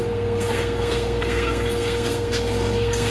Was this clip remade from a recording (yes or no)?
yes